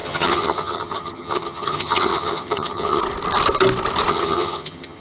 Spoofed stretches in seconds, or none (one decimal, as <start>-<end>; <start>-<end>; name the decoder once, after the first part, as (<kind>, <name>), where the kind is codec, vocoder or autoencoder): 0.0-3.0 (vocoder, HiFi-GAN); 4.1-5.0

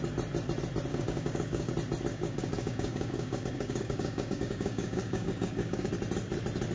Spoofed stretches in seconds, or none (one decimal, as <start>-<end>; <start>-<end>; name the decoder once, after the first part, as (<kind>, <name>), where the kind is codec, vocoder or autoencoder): 0.9-1.7 (codec, DAC); 2.1-5.9

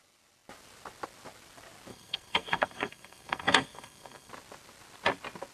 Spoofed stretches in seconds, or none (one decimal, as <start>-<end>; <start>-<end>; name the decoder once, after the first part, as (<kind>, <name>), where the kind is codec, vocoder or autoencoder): 1.9-4.3 (codec, SNAC)

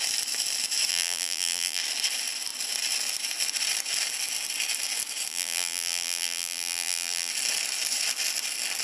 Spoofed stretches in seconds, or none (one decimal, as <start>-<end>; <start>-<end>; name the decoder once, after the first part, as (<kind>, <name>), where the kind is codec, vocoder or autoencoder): 0.9-1.8 (vocoder, BigVGAN v2); 5.3-7.3

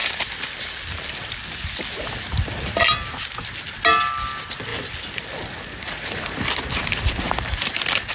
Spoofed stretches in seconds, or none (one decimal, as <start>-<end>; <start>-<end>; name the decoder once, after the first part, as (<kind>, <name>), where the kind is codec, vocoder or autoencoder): none

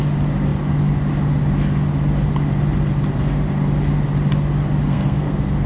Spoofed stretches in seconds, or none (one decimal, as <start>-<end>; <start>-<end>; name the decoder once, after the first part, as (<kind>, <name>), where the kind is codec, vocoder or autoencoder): 4.9-5.7 (codec, SNAC)

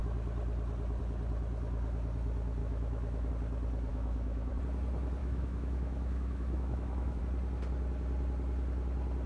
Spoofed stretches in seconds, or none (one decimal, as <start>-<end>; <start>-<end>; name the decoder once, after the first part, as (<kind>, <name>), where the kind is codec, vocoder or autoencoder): 2.6-3.3 (autoencoder, DAC-VAE); 3.9-4.5; 5.2-7.2